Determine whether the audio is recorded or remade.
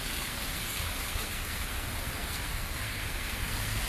remade